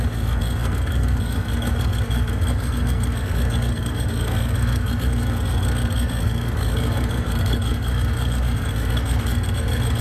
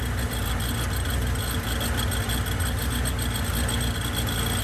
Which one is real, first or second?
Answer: second